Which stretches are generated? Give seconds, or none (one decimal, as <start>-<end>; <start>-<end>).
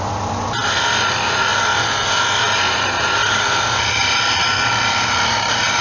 none